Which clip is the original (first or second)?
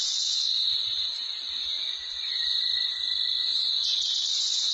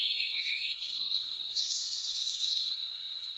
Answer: first